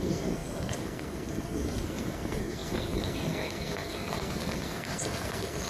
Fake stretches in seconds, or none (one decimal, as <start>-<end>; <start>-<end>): 0.0-5.7